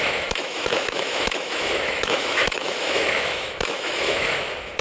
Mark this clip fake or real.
fake